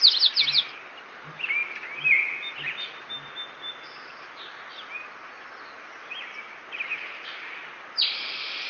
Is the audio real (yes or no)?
yes